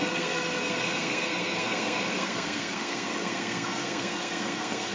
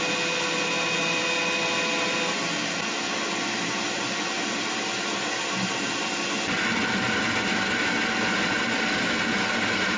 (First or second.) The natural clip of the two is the second